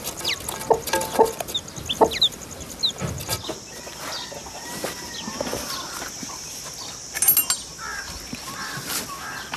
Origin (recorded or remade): recorded